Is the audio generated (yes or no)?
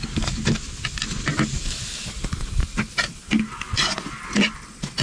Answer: no